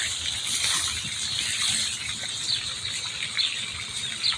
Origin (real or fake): real